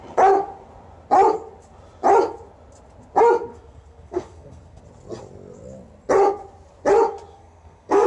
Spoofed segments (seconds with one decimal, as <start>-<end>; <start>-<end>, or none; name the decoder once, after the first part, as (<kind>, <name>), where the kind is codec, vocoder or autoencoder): 3.5-4.8 (codec, SNAC); 7.3-8.1